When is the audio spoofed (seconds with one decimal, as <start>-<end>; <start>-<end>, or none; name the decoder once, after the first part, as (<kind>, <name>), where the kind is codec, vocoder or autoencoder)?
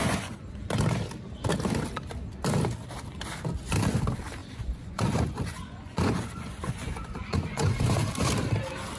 0.0-0.5 (vocoder, Vocos); 4.4-8.1